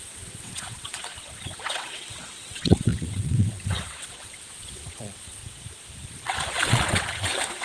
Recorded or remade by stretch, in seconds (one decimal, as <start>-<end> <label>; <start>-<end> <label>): 0.0-5.4 remade; 5.4-6.1 recorded; 6.1-7.6 remade